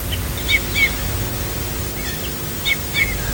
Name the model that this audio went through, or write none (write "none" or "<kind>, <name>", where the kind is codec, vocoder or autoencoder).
none